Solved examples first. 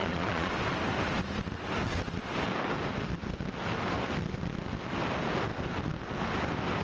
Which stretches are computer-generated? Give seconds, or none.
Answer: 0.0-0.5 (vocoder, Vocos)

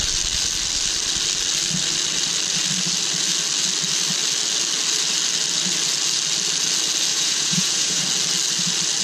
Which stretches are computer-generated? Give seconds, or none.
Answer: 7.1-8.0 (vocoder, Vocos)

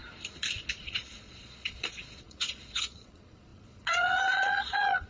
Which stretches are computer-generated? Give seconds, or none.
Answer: 0.8-5.1 (vocoder, Vocos)

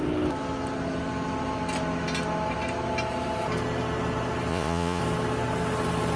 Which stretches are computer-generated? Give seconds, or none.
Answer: 4.5-5.0 (vocoder, Vocos)

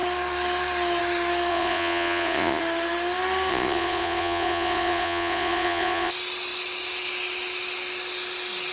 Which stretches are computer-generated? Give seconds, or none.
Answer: 1.5-2.6 (vocoder, Vocos); 3.5-6.1

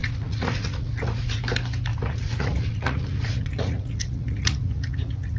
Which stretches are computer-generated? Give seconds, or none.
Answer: 0.0-1.4 (vocoder, Vocos); 1.9-5.4

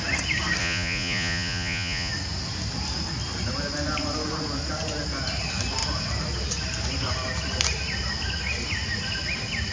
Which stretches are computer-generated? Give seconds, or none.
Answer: 0.6-2.1 (vocoder, Vocos)